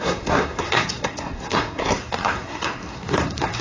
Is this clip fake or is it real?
fake